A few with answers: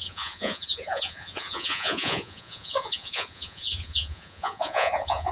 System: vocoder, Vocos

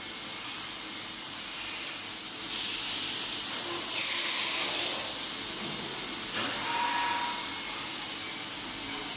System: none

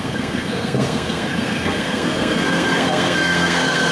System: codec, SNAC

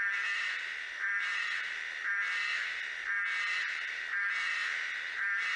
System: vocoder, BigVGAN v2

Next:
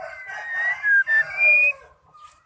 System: none